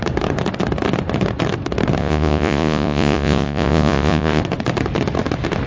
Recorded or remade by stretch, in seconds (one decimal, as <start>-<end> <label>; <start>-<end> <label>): 0.0-2.0 recorded; 2.0-4.4 remade; 4.4-5.7 recorded